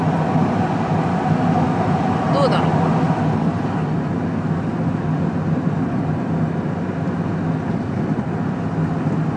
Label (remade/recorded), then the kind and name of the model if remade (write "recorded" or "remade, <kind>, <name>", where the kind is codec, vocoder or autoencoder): recorded